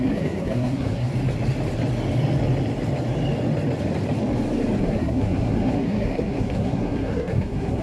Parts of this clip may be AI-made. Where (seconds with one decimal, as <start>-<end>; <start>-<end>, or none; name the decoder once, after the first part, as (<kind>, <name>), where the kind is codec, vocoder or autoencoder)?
0.0-1.1 (codec, SNAC); 4.8-7.8